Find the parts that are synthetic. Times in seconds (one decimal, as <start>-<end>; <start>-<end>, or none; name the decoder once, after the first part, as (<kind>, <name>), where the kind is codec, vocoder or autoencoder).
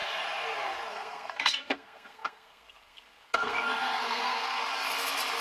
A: 0.9-4.6 (codec, SNAC)